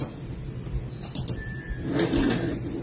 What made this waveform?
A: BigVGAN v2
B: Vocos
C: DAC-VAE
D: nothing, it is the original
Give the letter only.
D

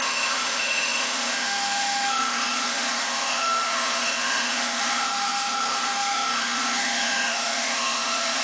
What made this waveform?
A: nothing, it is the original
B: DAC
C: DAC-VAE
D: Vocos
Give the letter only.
C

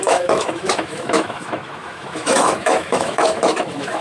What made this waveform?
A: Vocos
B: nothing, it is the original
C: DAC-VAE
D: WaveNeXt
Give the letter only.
C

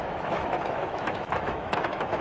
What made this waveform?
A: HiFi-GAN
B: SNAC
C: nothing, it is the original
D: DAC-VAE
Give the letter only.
D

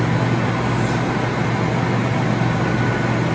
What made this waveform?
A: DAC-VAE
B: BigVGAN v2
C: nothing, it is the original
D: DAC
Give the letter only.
C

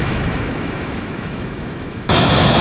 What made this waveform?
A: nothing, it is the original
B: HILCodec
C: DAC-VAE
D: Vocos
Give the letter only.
C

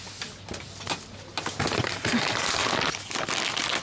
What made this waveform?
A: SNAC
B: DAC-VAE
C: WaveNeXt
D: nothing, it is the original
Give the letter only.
D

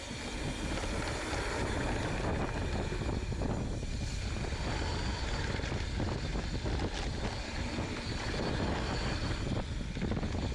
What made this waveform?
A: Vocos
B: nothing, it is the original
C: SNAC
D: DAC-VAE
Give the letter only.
B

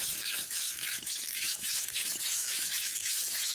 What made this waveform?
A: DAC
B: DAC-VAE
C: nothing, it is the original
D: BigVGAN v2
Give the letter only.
B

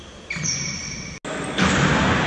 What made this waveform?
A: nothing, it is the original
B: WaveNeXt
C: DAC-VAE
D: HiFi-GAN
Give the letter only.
A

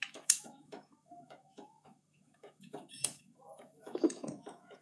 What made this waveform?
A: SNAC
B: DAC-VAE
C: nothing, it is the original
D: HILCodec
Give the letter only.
B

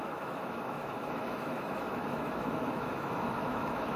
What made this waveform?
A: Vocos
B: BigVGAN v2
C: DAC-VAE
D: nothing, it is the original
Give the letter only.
C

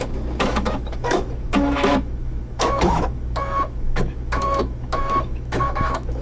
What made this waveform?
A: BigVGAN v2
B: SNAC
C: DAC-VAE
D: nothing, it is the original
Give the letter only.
C